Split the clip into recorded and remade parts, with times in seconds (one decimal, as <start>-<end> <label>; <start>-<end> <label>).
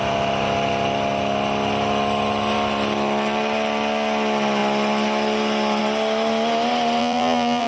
0.0-7.0 recorded; 7.0-7.7 remade